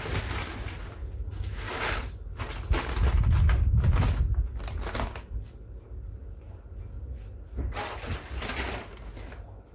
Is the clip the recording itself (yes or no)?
yes